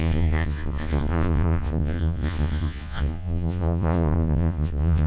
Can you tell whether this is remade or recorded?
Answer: remade